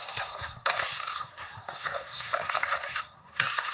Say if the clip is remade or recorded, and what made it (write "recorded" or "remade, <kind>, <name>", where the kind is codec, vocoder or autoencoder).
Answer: remade, codec, SNAC